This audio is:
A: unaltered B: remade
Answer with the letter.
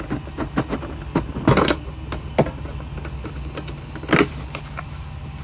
A